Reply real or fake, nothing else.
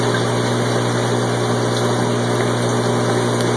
real